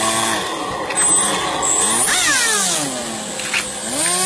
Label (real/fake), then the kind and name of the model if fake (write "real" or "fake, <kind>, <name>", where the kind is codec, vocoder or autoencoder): real